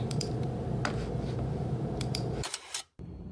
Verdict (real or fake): fake